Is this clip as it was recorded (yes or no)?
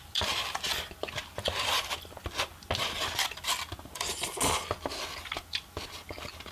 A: yes